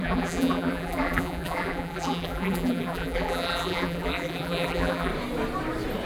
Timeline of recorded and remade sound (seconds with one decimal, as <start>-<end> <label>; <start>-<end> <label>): 0.0-5.1 remade; 5.1-6.1 recorded